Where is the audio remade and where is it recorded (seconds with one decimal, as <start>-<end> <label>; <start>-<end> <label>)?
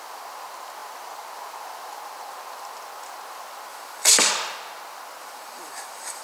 0.0-3.7 recorded; 3.7-4.3 remade; 4.3-5.2 recorded; 5.2-6.2 remade